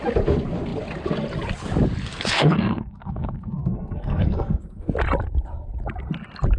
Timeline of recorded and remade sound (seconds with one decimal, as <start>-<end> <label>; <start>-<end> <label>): 0.0-2.0 recorded; 2.0-4.8 remade; 4.8-6.6 recorded